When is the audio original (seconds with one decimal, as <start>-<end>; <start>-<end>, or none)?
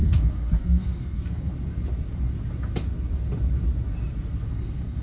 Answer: 1.5-4.5